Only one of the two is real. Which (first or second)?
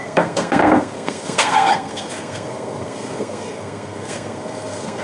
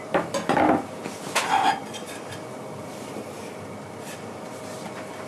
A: second